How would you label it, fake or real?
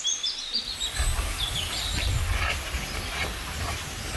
real